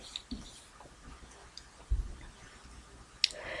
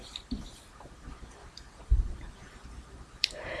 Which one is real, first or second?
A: first